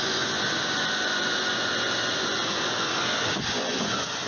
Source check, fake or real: fake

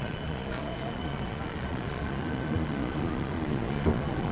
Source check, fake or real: fake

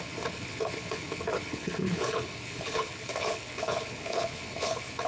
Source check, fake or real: fake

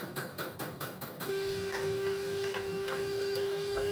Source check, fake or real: fake